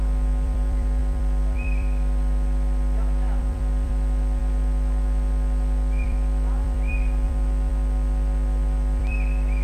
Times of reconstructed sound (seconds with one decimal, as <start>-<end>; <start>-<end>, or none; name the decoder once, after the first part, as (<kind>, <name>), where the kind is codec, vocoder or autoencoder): 0.0-9.6 (vocoder, BigVGAN v2)